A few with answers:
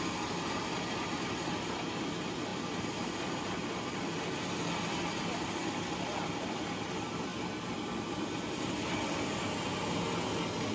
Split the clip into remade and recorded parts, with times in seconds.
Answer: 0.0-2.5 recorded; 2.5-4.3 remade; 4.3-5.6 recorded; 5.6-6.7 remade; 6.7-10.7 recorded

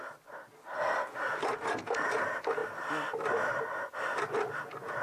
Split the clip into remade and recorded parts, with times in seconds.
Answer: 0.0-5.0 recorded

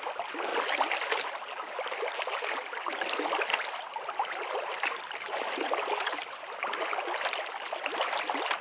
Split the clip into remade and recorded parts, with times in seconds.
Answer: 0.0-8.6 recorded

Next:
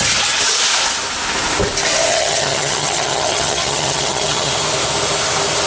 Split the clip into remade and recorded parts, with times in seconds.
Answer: 0.0-2.1 recorded; 2.1-4.5 remade; 4.5-5.7 recorded